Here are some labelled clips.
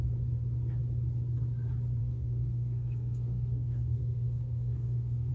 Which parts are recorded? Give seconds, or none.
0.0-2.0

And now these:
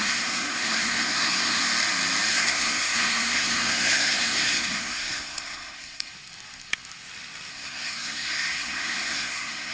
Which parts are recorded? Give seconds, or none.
1.6-2.3; 6.1-7.5

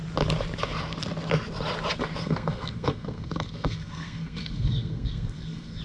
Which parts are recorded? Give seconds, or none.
0.0-2.2

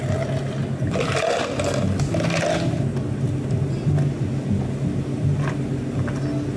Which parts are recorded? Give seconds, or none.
0.0-6.6